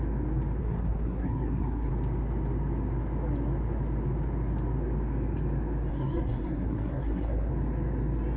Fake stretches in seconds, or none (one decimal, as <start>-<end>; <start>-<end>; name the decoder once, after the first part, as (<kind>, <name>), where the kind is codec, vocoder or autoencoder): 0.6-1.9 (codec, SNAC); 5.9-7.5